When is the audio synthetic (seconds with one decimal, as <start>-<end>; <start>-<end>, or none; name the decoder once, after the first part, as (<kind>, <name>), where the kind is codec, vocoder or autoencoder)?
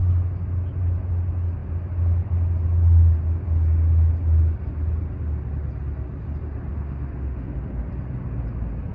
6.7-7.9 (autoencoder, DAC-VAE)